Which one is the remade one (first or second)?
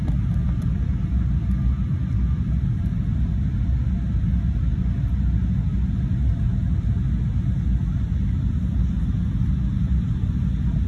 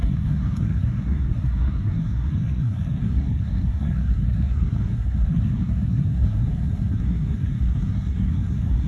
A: second